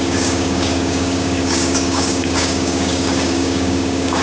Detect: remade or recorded remade